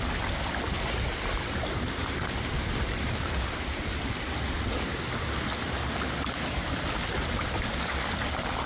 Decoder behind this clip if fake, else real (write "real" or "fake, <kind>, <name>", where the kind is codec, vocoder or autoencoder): real